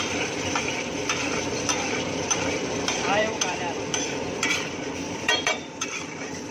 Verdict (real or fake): fake